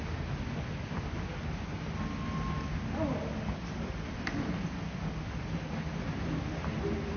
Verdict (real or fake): real